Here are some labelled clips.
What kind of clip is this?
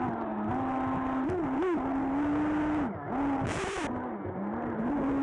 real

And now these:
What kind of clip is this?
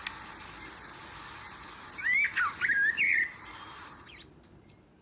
real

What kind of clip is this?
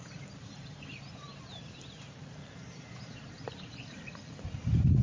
fake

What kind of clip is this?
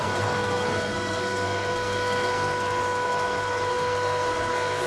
fake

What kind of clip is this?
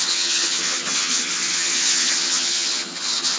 fake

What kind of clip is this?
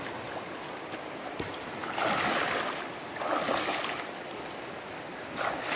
real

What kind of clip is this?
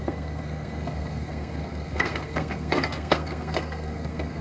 fake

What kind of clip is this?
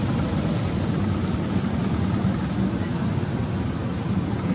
real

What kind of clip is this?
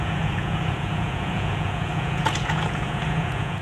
fake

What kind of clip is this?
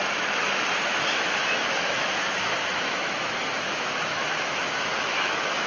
fake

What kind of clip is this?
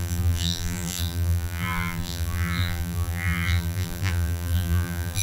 fake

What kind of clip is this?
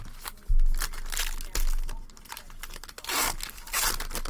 real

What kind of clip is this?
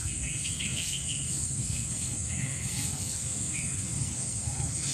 fake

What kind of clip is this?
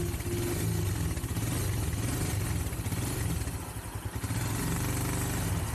real